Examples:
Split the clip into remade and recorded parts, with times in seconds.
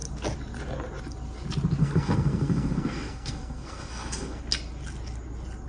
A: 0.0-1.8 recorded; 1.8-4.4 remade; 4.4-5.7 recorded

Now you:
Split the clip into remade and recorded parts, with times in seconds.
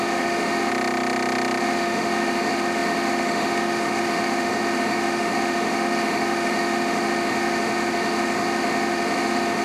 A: 0.0-0.7 remade; 0.7-1.6 recorded; 1.6-9.6 remade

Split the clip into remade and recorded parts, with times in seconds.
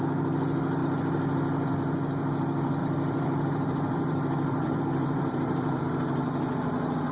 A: 0.0-2.8 recorded; 2.8-5.8 remade; 5.8-7.1 recorded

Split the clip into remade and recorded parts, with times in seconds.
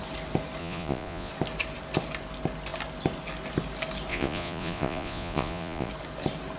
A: 0.0-0.6 recorded; 0.6-1.3 remade; 1.3-4.1 recorded; 4.1-5.9 remade; 5.9-6.6 recorded